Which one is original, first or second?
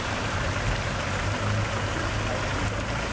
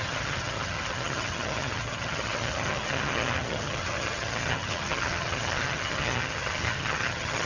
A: first